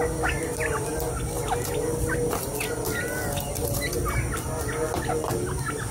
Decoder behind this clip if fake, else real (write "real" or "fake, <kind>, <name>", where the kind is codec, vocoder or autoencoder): real